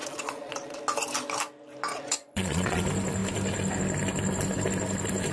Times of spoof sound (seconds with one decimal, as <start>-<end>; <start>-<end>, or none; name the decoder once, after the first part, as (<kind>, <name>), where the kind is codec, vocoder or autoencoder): 0.0-0.8 (vocoder, Vocos); 1.9-2.8